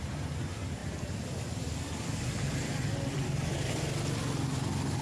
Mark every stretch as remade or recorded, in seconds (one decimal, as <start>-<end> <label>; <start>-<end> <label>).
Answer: 0.0-0.8 recorded; 0.8-3.7 remade; 3.7-5.0 recorded